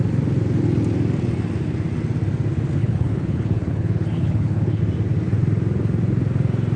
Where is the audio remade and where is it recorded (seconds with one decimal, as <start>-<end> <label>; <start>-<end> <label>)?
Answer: 0.0-2.8 recorded; 2.8-4.8 remade; 4.8-6.8 recorded